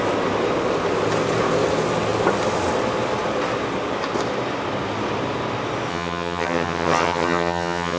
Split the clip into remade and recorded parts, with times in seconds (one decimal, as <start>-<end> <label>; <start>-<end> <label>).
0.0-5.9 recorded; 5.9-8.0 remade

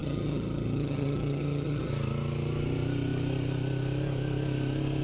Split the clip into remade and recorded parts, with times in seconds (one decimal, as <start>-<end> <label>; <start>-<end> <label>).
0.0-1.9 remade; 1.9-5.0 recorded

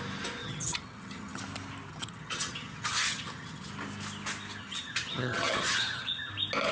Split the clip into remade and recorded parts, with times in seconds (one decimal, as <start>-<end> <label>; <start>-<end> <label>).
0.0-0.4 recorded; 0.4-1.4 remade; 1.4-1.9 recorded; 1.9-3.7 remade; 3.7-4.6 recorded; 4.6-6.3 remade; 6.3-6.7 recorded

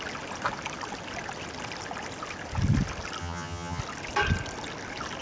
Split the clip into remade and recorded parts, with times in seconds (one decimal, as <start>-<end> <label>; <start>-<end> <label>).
0.0-3.2 recorded; 3.2-3.8 remade; 3.8-5.2 recorded